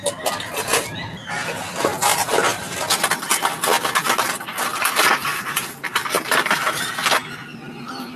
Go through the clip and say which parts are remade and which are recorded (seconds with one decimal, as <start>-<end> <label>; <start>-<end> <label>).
0.0-5.3 recorded; 5.3-6.9 remade; 6.9-8.2 recorded